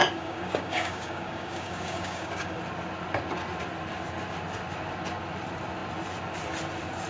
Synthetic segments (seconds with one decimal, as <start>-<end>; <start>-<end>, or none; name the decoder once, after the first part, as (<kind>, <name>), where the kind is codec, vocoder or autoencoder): 0.0-2.6 (codec, DAC)